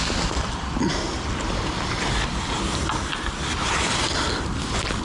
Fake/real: real